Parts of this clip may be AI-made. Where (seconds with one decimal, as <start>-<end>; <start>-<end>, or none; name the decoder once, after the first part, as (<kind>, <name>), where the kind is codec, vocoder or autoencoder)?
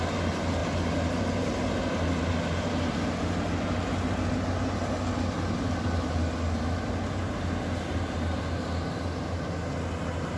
none